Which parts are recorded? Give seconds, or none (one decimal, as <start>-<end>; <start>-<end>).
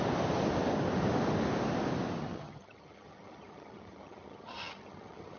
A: 0.0-2.2